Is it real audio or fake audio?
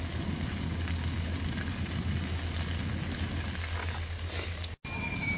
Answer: real